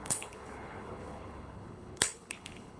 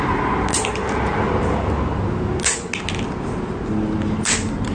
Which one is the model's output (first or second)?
first